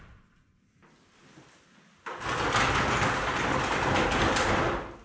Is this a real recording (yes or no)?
yes